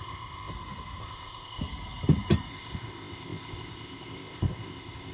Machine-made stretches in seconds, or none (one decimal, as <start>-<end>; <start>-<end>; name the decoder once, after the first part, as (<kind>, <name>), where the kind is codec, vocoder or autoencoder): 0.0-0.5 (codec, ZipCodec); 1.0-1.6; 2.5-5.1